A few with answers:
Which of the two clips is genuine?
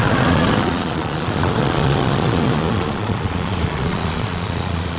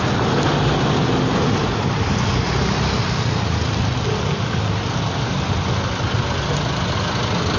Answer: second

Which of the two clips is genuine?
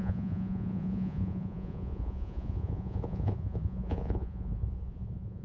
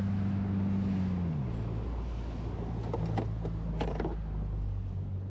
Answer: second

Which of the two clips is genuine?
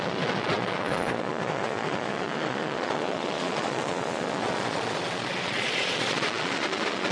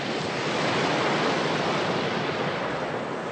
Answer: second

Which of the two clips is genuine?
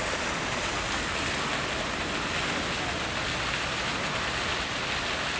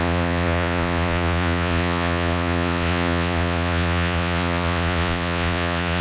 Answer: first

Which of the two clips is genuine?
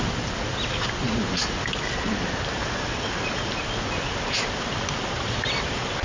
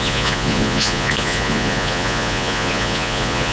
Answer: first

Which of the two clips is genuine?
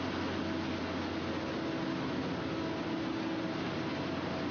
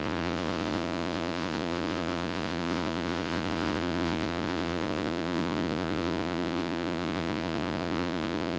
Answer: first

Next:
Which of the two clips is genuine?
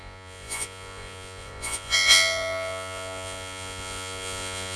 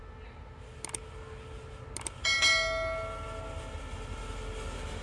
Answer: second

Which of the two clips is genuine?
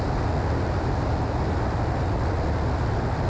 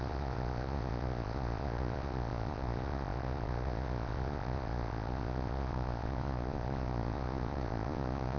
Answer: first